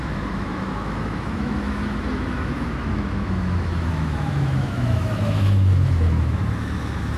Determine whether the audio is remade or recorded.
remade